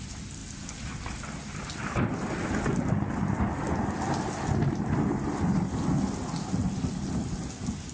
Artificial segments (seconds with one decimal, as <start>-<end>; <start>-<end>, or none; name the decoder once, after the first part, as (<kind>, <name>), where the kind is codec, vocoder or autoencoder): none